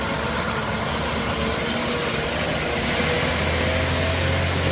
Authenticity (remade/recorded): recorded